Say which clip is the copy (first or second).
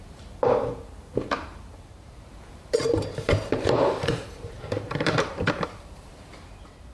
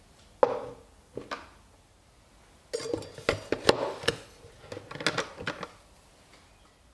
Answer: first